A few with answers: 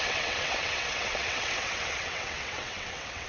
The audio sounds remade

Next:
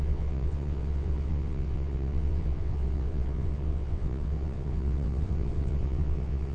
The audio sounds remade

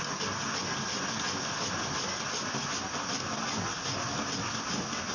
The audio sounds recorded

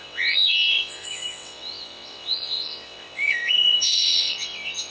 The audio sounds remade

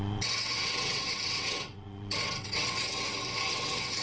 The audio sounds remade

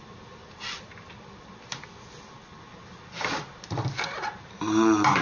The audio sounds recorded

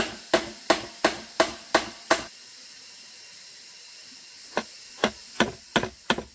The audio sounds recorded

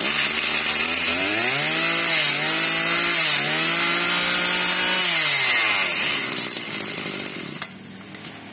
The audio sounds recorded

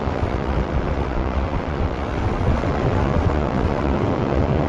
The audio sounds remade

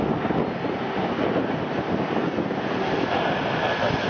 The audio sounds recorded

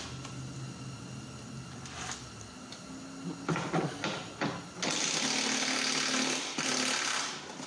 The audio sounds recorded